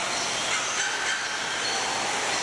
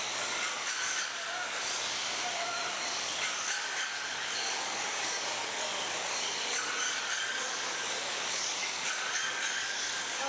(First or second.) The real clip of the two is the first